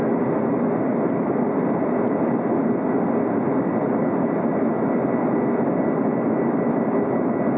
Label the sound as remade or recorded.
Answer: recorded